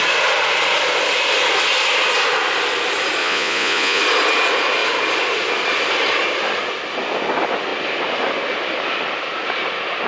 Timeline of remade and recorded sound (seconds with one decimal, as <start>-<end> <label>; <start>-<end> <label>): 0.0-3.2 recorded; 3.2-4.0 remade; 4.0-10.1 recorded